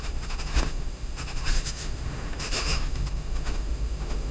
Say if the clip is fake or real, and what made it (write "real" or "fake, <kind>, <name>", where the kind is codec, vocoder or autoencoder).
fake, autoencoder, DAC-VAE